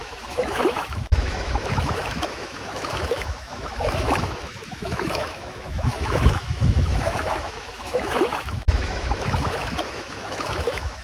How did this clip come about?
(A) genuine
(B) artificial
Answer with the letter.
B